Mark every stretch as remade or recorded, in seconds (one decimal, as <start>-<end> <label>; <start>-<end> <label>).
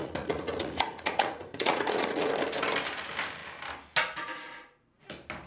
0.0-2.3 remade; 2.3-5.5 recorded